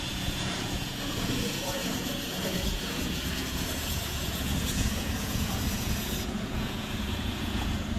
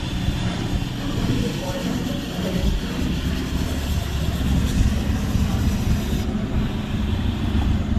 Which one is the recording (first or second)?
second